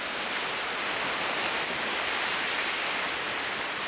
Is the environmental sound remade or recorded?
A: recorded